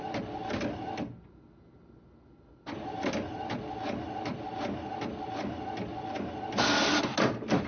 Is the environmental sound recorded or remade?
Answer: recorded